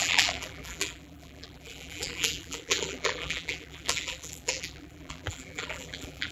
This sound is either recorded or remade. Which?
remade